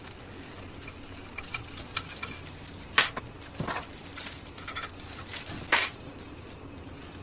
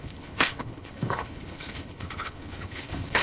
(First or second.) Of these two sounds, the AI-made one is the second